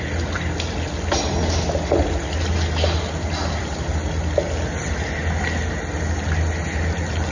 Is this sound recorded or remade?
recorded